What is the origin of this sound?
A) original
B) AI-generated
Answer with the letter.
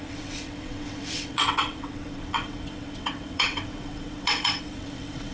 B